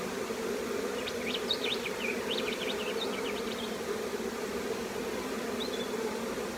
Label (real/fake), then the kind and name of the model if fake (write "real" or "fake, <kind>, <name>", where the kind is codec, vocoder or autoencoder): real